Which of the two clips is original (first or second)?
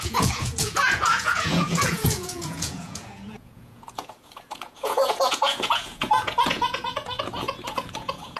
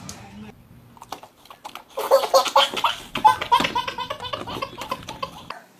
second